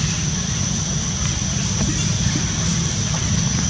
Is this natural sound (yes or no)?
yes